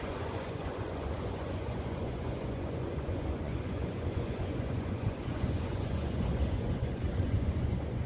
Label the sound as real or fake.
fake